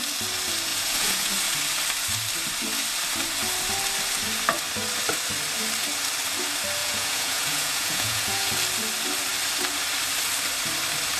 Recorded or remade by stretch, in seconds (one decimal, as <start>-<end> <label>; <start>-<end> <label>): 0.0-0.7 recorded; 0.7-1.3 remade; 1.3-6.8 recorded; 6.8-8.5 remade; 8.5-11.2 recorded

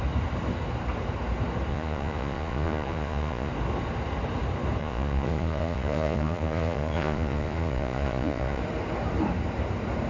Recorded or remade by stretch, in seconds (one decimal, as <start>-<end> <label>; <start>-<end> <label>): 0.0-1.7 recorded; 1.7-3.5 remade; 3.5-4.8 recorded; 4.8-8.6 remade; 8.6-10.1 recorded

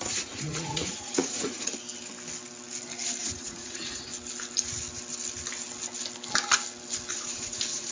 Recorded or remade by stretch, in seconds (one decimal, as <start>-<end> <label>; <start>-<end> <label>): 0.0-1.7 remade; 1.7-3.2 recorded; 3.2-4.1 remade; 4.1-7.1 recorded; 7.1-7.9 remade

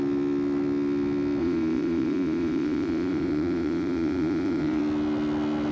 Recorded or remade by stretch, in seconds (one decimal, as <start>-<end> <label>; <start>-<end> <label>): 0.0-1.4 recorded; 1.4-4.8 remade; 4.8-5.7 recorded